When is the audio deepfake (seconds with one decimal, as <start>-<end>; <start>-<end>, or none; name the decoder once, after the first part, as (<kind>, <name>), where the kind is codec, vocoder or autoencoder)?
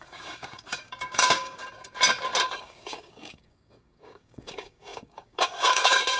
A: 0.0-1.6 (codec, DAC); 2.6-6.2